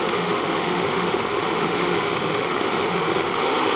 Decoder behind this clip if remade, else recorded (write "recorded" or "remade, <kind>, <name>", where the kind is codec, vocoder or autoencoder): remade, autoencoder, DAC-VAE